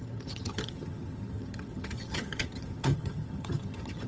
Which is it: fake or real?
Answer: fake